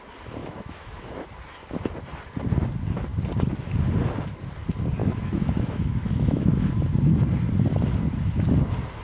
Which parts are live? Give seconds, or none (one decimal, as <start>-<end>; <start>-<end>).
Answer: 0.0-0.4; 1.2-5.0; 6.7-9.0